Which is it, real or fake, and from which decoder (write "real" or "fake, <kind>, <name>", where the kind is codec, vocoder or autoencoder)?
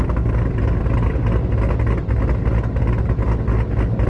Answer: real